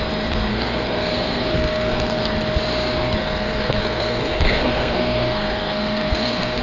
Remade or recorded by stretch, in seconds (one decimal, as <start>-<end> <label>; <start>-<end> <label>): 0.0-0.5 recorded; 0.5-2.2 remade; 2.2-3.2 recorded; 3.2-6.6 remade